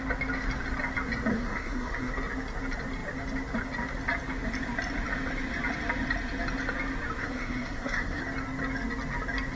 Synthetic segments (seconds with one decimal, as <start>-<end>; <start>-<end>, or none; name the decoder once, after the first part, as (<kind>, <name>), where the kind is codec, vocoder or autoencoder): 1.3-2.1 (codec, SNAC); 7.2-8.2